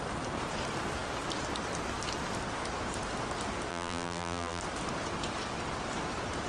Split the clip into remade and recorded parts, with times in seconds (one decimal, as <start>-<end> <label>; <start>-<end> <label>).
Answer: 0.0-3.7 recorded; 3.7-4.6 remade; 4.6-6.5 recorded